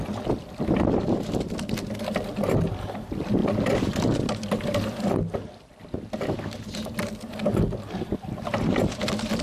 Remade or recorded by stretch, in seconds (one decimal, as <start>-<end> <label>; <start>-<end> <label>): 0.0-9.4 recorded